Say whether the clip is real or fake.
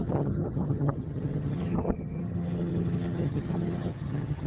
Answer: fake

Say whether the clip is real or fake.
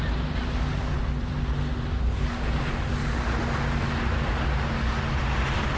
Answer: real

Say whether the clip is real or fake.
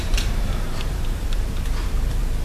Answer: fake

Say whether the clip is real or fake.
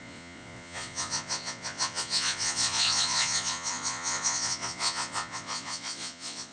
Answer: fake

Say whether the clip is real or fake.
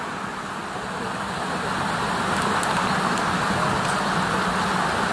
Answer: real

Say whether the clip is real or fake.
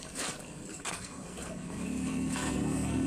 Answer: fake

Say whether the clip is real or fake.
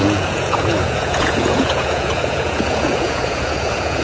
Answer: fake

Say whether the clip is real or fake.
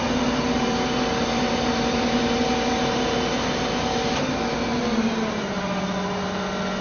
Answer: real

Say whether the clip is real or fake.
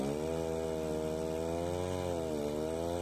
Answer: real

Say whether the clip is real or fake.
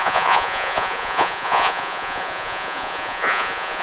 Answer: fake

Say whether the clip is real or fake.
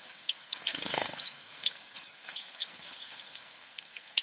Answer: fake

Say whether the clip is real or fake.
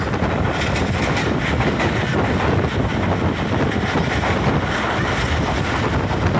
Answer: real